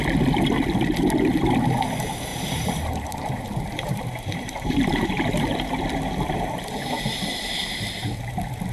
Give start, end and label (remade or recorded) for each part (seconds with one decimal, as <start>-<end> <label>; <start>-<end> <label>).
0.0-2.3 recorded; 2.3-7.0 remade; 7.0-8.7 recorded